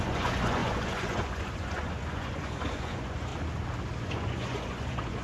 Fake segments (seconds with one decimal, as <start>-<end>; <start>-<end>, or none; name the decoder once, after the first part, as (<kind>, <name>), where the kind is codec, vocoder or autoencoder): 0.0-3.3 (vocoder, Vocos); 4.0-5.2